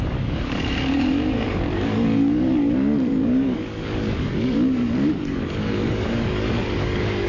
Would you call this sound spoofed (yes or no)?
yes